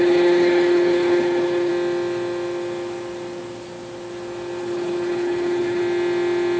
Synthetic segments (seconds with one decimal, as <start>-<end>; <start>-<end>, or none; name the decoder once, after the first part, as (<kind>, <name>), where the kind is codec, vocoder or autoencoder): 0.0-1.7 (codec, HILCodec); 4.6-5.8